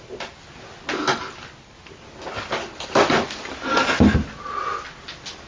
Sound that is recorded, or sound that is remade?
recorded